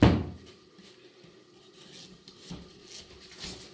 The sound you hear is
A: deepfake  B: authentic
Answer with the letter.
B